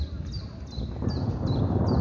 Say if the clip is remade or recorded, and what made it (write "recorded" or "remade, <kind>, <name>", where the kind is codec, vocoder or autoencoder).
recorded